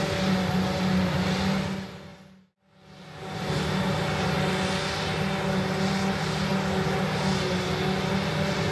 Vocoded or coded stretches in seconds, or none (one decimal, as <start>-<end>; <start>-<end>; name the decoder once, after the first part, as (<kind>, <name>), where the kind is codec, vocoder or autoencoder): none